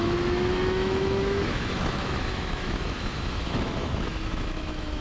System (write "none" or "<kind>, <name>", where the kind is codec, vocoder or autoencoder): autoencoder, DAC-VAE